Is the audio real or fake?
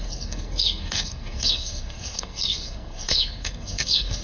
fake